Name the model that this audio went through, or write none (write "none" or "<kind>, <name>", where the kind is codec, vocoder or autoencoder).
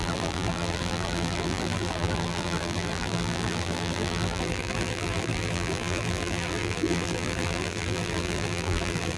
vocoder, BigVGAN v2